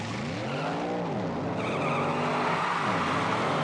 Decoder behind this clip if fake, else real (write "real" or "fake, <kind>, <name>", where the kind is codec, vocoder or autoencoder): real